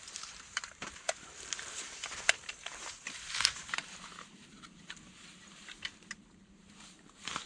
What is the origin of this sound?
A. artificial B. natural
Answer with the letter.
A